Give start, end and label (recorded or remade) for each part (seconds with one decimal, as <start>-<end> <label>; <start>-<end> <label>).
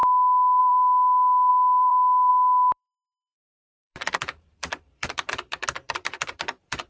0.0-0.6 recorded; 0.6-6.9 remade